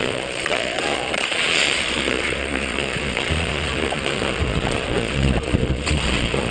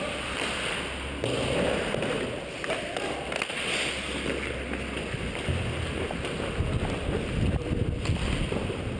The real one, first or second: second